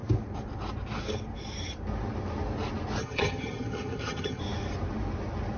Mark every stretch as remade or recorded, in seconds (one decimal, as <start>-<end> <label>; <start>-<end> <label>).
0.0-3.0 recorded; 3.0-4.4 remade; 4.4-5.6 recorded